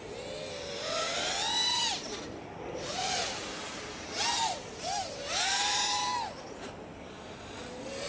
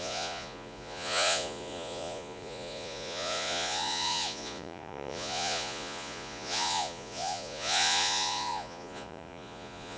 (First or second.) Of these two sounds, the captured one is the first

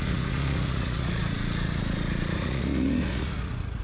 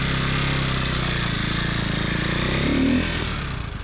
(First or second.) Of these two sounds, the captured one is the second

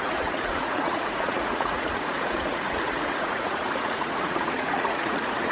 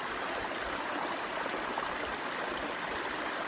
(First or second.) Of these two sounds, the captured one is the second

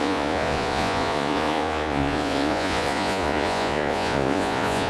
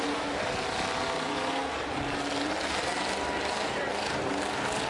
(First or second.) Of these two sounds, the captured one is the second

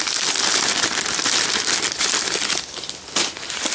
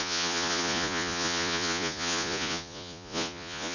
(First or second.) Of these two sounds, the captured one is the first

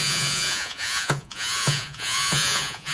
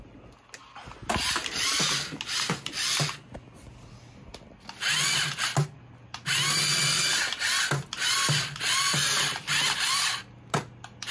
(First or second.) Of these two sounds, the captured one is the second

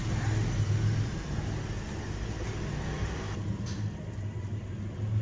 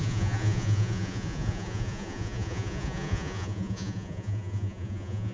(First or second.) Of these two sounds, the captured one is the first